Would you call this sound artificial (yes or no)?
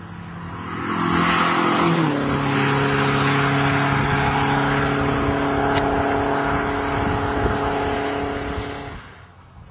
no